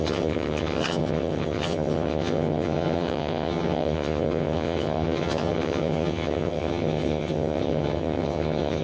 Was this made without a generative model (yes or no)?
no